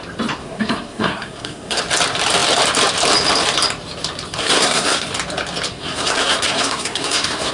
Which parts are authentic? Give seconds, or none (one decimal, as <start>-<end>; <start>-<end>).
0.0-0.4; 1.8-4.4; 5.1-5.7